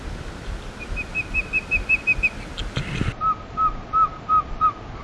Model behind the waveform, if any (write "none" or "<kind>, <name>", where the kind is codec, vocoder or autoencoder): none